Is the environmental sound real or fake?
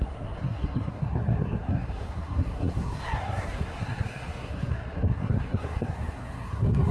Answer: fake